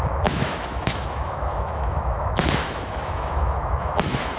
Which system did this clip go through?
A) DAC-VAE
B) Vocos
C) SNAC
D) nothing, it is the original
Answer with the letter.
A